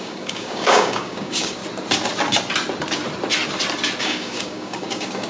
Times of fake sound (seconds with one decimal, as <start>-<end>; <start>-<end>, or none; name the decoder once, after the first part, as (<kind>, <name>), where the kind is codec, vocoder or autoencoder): 0.0-1.6 (codec, DAC); 4.0-5.3